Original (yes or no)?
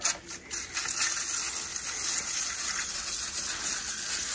yes